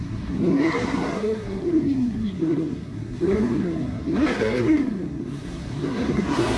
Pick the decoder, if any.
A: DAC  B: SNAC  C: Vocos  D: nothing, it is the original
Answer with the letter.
B